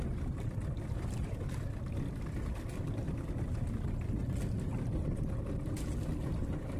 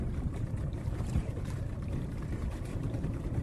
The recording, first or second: first